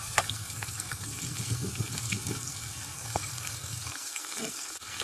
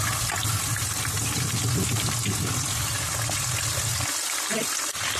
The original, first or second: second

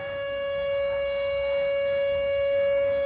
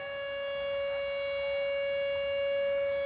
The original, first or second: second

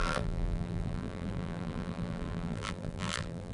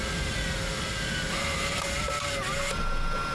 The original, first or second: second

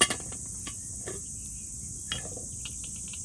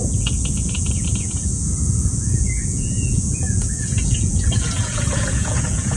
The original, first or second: first